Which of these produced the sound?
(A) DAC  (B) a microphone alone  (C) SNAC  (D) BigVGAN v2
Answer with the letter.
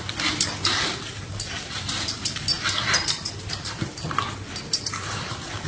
D